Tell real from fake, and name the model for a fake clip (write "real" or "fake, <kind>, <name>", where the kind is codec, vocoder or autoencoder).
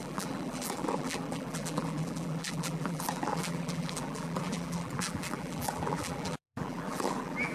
fake, vocoder, BigVGAN v2